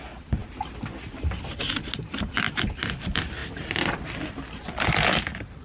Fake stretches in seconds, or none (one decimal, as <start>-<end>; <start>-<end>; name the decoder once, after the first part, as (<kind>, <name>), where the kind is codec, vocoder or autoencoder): none